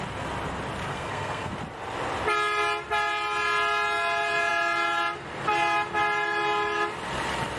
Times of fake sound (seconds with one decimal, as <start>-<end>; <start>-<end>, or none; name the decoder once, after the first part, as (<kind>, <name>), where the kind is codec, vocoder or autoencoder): 0.9-1.5 (codec, SNAC)